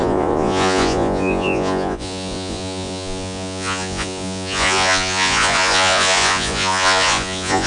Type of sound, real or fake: fake